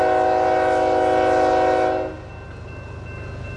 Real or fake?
real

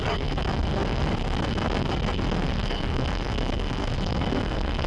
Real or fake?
fake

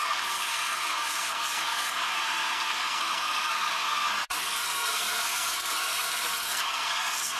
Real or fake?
fake